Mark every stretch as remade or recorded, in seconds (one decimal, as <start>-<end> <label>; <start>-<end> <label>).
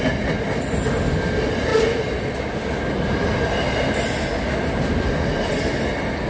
0.0-6.3 recorded